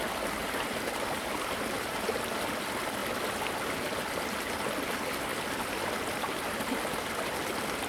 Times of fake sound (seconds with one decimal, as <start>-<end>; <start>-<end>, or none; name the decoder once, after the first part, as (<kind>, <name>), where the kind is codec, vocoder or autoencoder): 0.4-2.4 (vocoder, BigVGAN v2)